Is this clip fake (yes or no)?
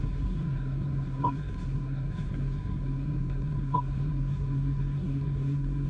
yes